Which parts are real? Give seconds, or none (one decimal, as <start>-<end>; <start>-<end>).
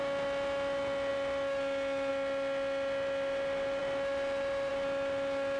0.0-5.6